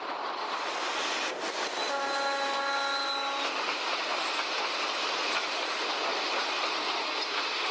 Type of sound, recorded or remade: recorded